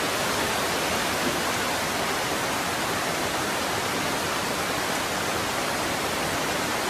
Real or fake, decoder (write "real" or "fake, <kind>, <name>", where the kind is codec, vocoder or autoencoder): fake, vocoder, BigVGAN v2